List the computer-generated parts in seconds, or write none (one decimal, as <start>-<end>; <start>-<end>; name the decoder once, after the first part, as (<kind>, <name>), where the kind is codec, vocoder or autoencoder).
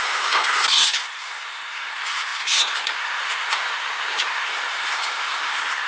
0.0-5.9 (codec, SNAC)